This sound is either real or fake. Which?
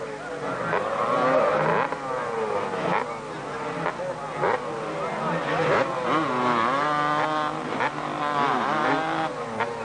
real